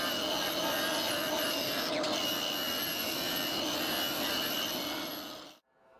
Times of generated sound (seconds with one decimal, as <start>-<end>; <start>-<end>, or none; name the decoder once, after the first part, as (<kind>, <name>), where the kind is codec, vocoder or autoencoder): none